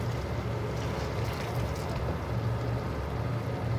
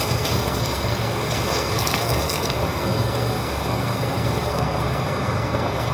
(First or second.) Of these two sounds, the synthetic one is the second